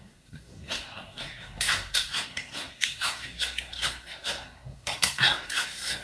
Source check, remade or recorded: remade